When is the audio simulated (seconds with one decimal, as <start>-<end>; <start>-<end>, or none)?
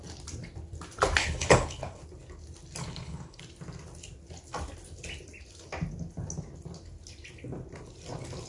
1.2-2.0; 2.8-3.4